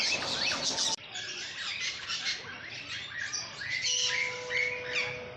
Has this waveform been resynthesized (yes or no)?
no